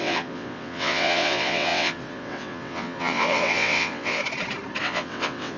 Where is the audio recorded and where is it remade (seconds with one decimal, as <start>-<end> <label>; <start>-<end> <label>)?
0.0-4.2 remade; 4.2-4.8 recorded; 4.8-5.6 remade